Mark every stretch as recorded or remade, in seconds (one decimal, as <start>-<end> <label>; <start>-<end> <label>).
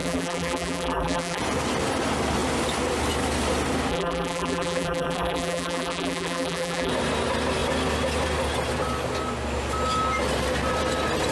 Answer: 0.0-1.4 remade; 1.4-3.9 recorded; 3.9-6.9 remade; 6.9-11.3 recorded